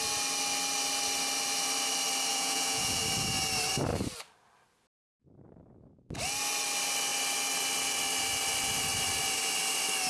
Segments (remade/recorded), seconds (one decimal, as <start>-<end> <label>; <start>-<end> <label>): 0.0-2.3 recorded; 2.3-3.0 remade; 3.0-10.1 recorded